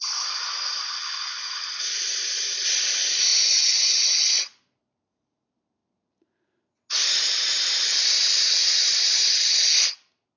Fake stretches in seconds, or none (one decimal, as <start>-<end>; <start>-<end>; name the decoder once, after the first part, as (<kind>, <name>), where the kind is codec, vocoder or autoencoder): none